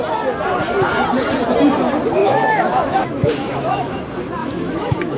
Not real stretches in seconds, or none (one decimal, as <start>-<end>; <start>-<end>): 2.2-4.0; 4.4-5.2